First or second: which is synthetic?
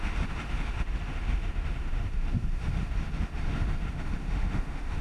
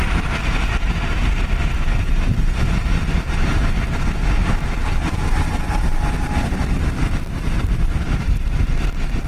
first